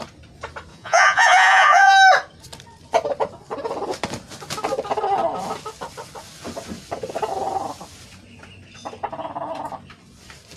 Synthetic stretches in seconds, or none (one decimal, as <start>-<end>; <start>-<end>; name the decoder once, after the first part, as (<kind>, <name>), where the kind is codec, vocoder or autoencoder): 0.7-1.9 (vocoder, Vocos)